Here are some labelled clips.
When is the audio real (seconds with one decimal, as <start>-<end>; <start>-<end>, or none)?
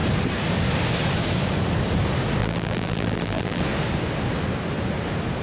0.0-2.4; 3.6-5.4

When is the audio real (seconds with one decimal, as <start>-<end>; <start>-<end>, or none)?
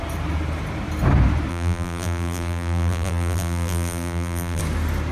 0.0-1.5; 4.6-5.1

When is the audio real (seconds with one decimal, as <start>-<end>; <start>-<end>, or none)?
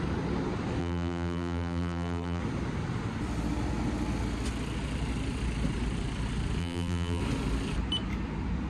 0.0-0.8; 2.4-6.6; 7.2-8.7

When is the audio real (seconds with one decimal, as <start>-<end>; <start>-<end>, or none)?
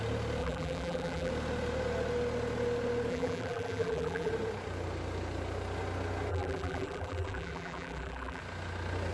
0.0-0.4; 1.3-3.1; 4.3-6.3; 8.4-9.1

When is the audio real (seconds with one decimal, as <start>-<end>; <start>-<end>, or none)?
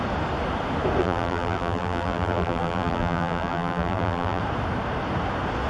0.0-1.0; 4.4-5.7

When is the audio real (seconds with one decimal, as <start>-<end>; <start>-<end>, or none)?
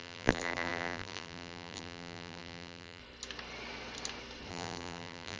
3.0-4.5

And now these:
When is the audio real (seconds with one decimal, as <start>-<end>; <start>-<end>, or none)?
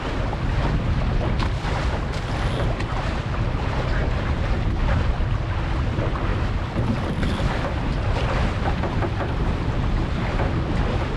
0.0-6.3; 8.4-11.2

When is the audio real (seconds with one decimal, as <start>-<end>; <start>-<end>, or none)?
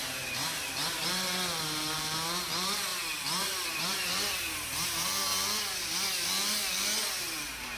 5.3-7.0